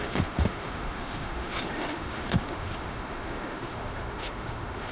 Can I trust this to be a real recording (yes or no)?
no